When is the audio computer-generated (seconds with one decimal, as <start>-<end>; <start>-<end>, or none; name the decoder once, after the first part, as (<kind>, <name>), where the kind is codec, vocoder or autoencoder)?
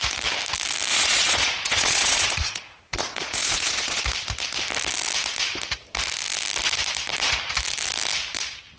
0.9-4.0 (vocoder, Vocos)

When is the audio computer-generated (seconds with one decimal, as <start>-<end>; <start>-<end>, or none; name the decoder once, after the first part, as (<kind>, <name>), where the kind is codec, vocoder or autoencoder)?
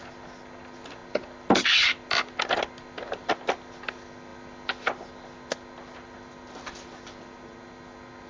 none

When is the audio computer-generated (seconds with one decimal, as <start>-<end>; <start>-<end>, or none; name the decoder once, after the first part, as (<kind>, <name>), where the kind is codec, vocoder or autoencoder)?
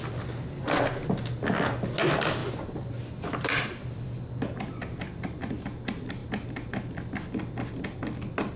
2.4-4.2 (vocoder, BigVGAN v2)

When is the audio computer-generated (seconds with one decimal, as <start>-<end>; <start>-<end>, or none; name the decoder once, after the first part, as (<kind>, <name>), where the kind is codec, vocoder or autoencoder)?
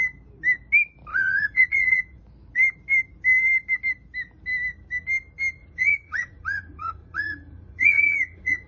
1.1-2.2 (vocoder, Vocos); 5.6-8.7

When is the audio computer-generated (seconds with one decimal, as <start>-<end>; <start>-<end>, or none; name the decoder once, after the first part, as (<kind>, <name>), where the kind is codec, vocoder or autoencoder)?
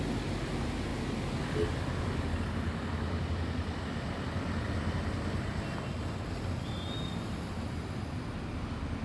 0.9-2.3 (vocoder, BigVGAN v2)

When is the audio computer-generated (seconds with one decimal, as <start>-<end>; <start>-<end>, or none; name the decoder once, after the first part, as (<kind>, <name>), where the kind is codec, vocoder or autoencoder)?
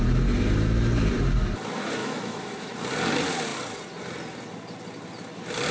2.0-2.7 (autoencoder, DAC-VAE)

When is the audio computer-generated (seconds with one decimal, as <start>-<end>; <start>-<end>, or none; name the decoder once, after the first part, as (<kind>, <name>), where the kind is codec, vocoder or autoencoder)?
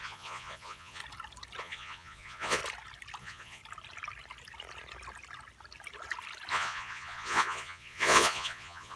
0.0-1.0 (vocoder, Vocos); 1.6-2.6; 3.2-3.6; 6.5-9.0